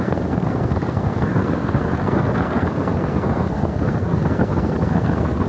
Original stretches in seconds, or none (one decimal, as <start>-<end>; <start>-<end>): none